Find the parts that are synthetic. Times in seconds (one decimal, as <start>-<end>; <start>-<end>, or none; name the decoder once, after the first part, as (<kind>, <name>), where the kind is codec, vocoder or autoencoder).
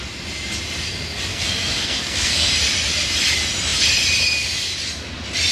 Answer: 1.3-2.5 (codec, SNAC)